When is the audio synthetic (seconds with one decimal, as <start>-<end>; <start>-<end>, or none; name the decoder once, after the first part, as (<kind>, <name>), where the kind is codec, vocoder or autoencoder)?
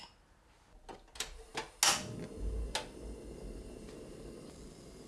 none